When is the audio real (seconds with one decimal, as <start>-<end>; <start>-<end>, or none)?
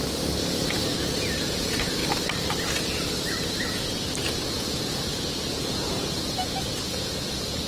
0.0-1.4; 2.0-4.4